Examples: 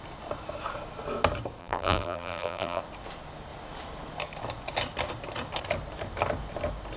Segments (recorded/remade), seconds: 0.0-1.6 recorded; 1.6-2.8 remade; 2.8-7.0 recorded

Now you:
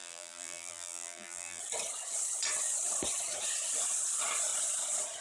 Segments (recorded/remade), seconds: 0.0-1.6 remade; 1.6-5.2 recorded

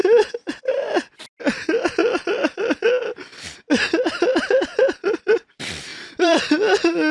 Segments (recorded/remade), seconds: 0.0-2.0 recorded; 2.0-2.7 remade; 2.7-5.9 recorded; 5.9-6.5 remade; 6.5-7.1 recorded